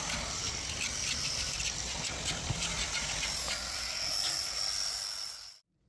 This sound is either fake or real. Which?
real